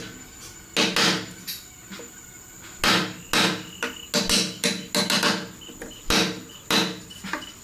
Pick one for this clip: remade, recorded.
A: recorded